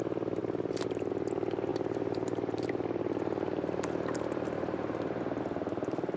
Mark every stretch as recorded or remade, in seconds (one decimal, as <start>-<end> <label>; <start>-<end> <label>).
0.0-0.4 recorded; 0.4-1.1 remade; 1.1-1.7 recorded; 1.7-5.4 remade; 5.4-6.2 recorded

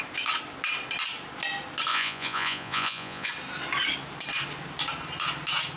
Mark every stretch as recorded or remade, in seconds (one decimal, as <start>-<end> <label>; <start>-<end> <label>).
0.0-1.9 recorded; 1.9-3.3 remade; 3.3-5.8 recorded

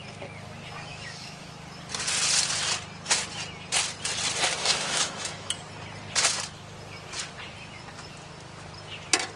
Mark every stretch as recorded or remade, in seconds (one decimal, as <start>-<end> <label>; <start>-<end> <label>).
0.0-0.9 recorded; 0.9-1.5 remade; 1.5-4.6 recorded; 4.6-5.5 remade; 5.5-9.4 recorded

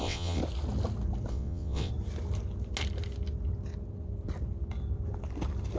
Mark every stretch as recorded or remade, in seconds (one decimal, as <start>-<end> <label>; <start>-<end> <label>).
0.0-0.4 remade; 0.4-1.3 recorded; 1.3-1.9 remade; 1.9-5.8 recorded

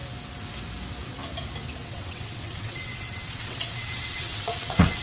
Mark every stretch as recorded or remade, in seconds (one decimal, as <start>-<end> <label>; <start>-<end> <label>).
0.0-1.8 recorded; 1.8-5.0 remade

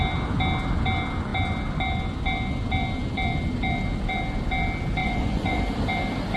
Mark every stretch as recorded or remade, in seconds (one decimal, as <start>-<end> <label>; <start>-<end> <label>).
0.0-5.0 recorded; 5.0-5.6 remade; 5.6-6.4 recorded